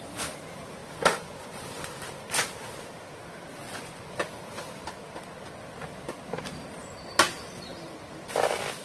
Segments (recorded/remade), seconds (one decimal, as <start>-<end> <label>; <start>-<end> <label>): 0.0-0.8 recorded; 0.8-1.6 remade; 1.6-3.6 recorded; 3.6-4.2 remade; 4.2-8.8 recorded